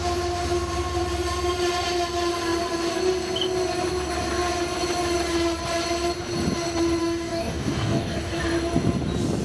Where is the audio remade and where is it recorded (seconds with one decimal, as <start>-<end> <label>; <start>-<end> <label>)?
0.0-7.0 recorded; 7.0-8.4 remade; 8.4-9.4 recorded